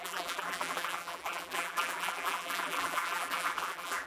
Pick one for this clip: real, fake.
fake